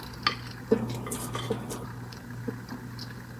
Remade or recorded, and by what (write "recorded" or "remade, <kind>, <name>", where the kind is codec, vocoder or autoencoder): recorded